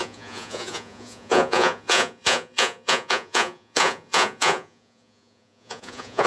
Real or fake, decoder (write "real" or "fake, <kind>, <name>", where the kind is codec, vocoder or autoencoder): fake, vocoder, Vocos